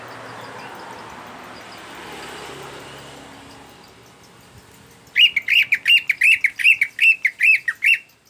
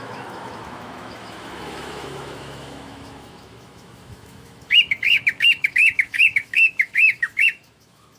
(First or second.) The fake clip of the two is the second